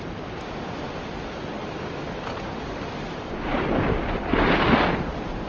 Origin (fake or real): real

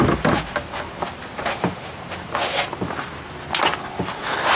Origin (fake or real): real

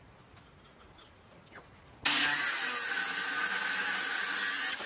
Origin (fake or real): real